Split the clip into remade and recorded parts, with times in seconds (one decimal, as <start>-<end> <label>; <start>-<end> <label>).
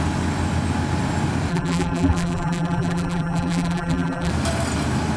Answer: 0.0-1.5 recorded; 1.5-4.3 remade; 4.3-5.2 recorded